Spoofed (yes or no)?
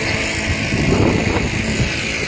no